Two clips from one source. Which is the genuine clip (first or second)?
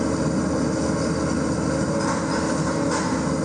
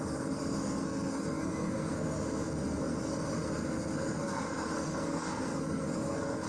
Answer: first